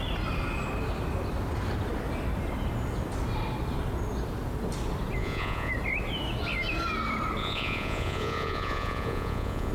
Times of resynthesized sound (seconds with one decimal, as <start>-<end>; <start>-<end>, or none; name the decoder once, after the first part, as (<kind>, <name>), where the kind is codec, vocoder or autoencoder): 5.2-5.7 (vocoder, Vocos); 7.4-9.7